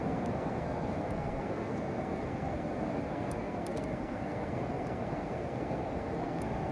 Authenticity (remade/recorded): remade